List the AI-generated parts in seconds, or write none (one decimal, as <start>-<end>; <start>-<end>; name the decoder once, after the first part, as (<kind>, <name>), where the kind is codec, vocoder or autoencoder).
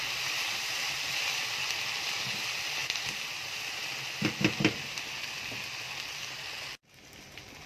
none